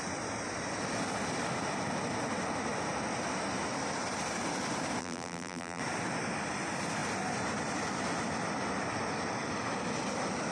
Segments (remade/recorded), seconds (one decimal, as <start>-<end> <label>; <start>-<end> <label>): 0.0-5.0 recorded; 5.0-5.8 remade; 5.8-10.5 recorded